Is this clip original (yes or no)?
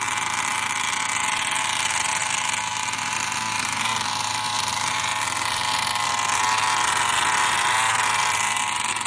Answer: yes